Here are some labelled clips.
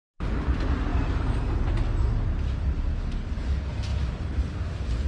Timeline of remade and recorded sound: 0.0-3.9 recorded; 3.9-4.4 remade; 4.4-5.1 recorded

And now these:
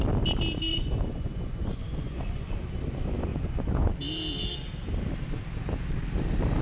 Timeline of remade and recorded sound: 0.0-0.7 recorded; 0.7-2.5 remade; 2.5-3.3 recorded; 3.3-3.9 remade; 3.9-6.6 recorded

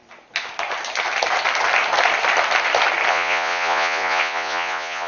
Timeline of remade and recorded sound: 0.0-3.1 recorded; 3.1-5.1 remade

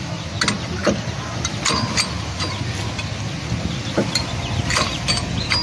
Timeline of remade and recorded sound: 0.0-5.6 recorded

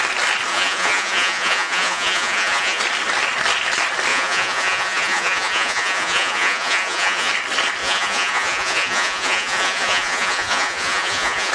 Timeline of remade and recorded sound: 0.0-0.5 recorded; 0.5-2.8 remade; 2.8-4.1 recorded; 4.1-7.3 remade; 7.3-7.8 recorded; 7.8-11.5 remade

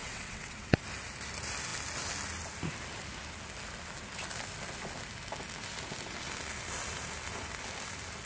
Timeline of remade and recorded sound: 0.0-0.8 remade; 0.8-8.3 recorded